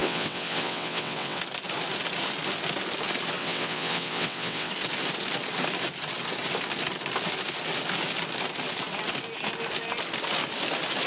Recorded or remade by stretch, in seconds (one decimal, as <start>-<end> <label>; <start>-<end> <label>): 0.0-1.4 remade; 1.4-3.4 recorded; 3.4-4.7 remade; 4.7-11.1 recorded